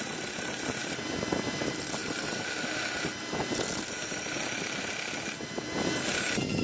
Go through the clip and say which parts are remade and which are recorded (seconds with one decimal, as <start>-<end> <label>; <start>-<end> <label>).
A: 0.0-6.6 recorded